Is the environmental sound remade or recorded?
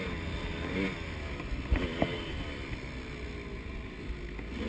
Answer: recorded